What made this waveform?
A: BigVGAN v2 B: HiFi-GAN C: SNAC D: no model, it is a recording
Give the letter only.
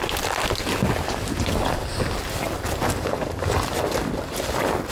D